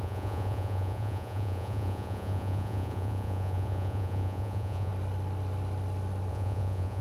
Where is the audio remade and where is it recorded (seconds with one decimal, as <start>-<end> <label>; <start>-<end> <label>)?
0.0-4.9 remade; 4.9-6.3 recorded; 6.3-7.0 remade